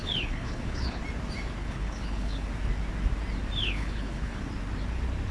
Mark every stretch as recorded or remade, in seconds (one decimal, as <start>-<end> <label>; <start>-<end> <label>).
0.0-1.0 remade; 1.0-1.6 recorded; 1.6-2.5 remade; 2.5-3.6 recorded; 3.6-4.4 remade; 4.4-5.3 recorded